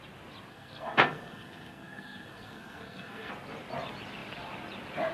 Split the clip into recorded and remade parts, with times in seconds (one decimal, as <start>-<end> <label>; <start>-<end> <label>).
0.0-0.5 recorded; 0.5-3.3 remade; 3.3-5.1 recorded